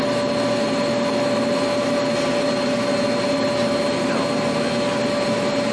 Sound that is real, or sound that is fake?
real